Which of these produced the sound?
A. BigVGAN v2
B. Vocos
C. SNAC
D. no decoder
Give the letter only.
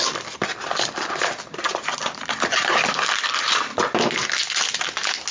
D